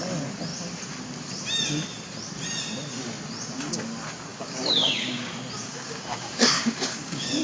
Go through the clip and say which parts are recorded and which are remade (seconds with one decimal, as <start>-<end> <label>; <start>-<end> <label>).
0.0-4.3 recorded; 4.3-5.3 remade; 5.3-5.7 recorded; 5.7-7.4 remade